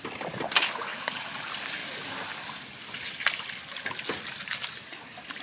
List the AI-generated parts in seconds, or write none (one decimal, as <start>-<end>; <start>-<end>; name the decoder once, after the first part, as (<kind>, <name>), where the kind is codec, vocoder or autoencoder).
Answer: 0.9-1.4 (vocoder, BigVGAN v2)